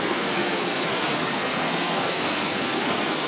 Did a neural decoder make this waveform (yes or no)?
yes